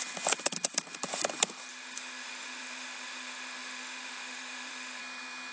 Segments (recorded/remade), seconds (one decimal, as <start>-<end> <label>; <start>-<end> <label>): 0.0-1.7 recorded; 1.7-5.0 remade; 5.0-5.5 recorded